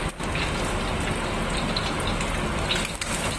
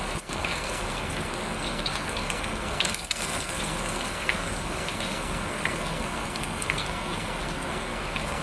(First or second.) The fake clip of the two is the second